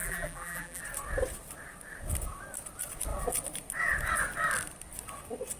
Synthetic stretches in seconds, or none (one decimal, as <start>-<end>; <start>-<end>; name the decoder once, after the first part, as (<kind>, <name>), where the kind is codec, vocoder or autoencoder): 0.0-0.8 (vocoder, BigVGAN v2)